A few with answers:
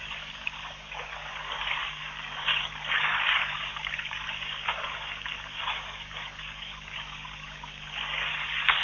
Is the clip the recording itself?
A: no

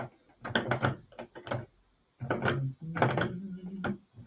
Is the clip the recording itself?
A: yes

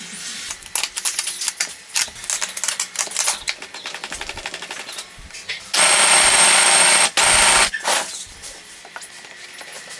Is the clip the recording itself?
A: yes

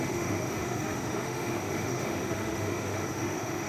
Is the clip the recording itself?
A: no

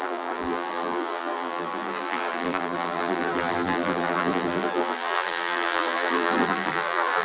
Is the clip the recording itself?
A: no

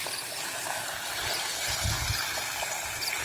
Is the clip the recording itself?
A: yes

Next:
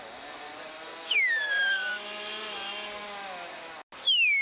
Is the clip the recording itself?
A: yes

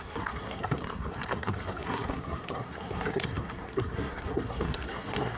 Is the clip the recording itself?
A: no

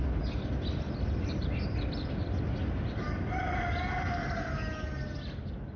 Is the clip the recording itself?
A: yes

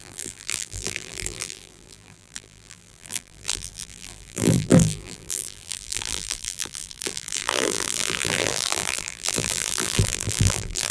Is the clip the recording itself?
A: no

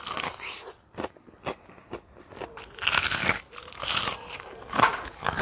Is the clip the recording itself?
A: yes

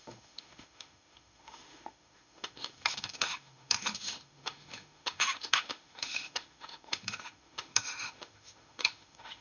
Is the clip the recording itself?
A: no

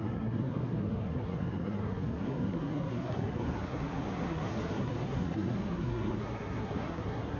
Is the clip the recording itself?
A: no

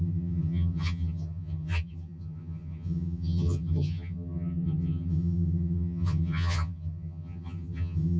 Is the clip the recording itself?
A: no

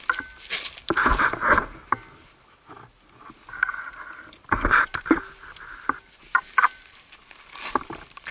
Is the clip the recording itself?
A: yes